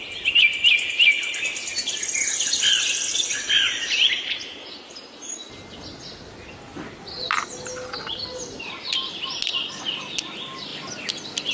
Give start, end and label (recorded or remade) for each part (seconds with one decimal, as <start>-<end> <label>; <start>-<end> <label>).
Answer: 0.0-11.5 recorded